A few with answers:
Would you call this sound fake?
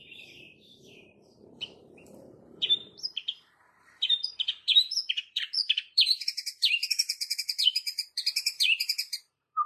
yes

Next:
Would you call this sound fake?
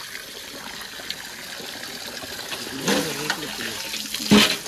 no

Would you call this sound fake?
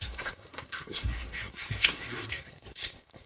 yes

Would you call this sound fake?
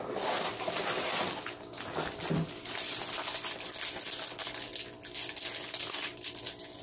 no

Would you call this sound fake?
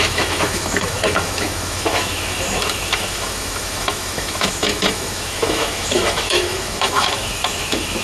yes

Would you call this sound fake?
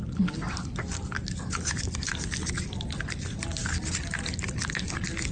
no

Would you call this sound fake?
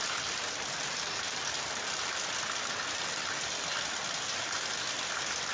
no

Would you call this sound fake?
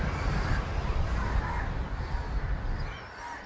no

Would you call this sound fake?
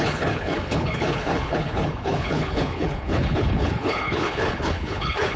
yes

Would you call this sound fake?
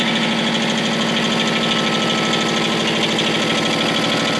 no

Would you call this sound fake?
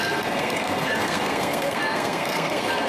yes